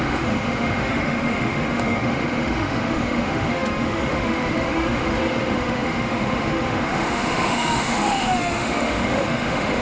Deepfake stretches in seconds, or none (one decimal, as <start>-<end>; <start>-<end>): 0.0-9.8